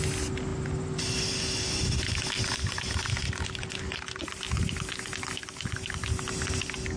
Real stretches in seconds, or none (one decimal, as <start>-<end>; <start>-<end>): 0.0-7.0